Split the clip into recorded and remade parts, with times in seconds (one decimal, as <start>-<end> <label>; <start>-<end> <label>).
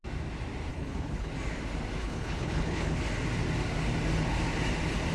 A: 0.0-0.7 recorded; 0.7-1.3 remade; 1.3-2.0 recorded; 2.0-3.0 remade; 3.0-5.1 recorded